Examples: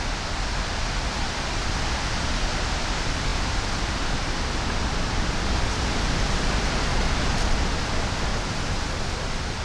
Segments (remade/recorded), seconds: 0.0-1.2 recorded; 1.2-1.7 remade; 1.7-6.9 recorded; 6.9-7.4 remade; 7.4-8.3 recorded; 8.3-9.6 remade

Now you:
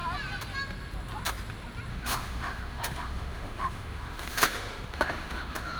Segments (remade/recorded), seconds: 0.0-1.9 recorded; 1.9-5.8 remade

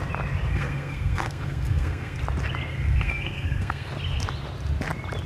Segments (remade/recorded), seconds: 0.0-0.5 recorded; 0.5-2.2 remade; 2.2-2.7 recorded; 2.7-3.9 remade; 3.9-5.3 recorded

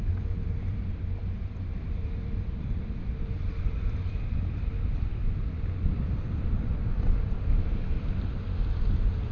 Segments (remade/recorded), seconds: 0.0-9.3 remade

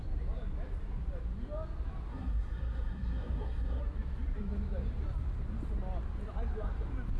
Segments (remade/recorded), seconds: 0.0-2.1 recorded; 2.1-3.8 remade; 3.8-7.2 recorded

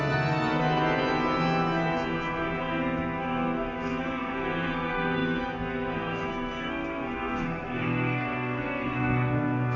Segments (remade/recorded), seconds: 0.0-0.6 remade; 0.6-2.6 recorded; 2.6-9.8 remade